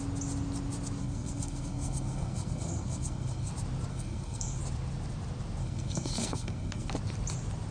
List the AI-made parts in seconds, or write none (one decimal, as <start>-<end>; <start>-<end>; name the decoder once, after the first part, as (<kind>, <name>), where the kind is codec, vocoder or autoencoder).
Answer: 1.0-3.5 (codec, SNAC); 3.9-4.6; 5.6-6.9